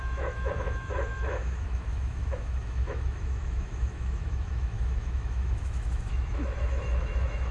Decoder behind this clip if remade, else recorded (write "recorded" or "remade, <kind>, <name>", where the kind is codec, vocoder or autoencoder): remade, autoencoder, DAC-VAE